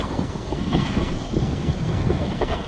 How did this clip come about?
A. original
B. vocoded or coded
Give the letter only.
B